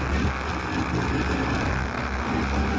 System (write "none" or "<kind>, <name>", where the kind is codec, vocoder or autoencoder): none